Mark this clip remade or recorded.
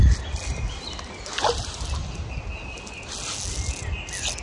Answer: recorded